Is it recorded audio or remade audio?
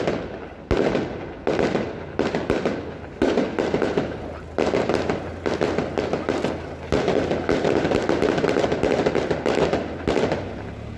recorded